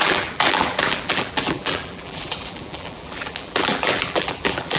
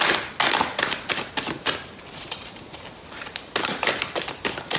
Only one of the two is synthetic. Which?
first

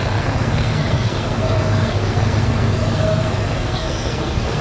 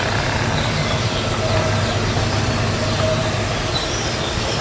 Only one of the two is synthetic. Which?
first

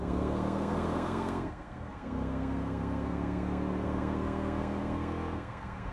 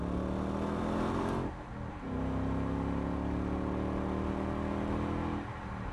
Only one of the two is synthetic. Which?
first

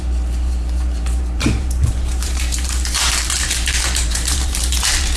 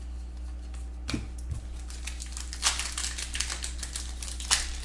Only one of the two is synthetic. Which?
first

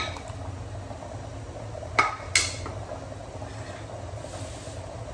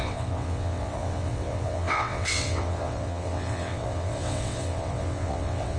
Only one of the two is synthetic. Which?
second